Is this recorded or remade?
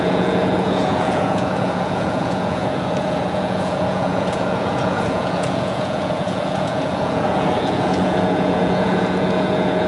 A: remade